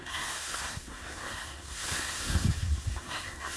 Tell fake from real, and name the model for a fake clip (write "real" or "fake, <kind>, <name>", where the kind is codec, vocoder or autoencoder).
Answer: fake, codec, SNAC